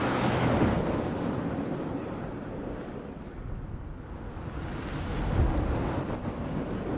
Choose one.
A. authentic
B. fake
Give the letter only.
A